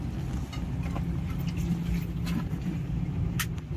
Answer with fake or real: real